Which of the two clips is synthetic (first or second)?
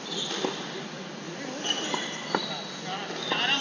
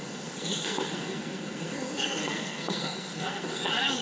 second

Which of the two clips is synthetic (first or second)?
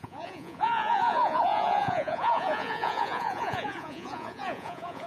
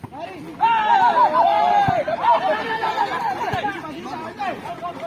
first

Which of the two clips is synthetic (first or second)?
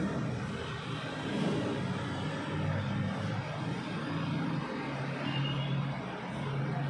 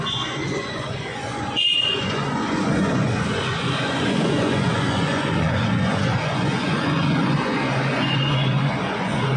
second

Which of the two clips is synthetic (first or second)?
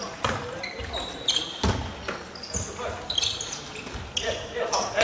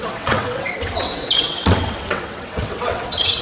second